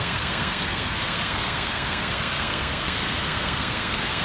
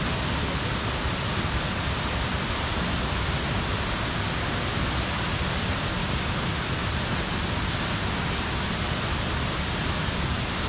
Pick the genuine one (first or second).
second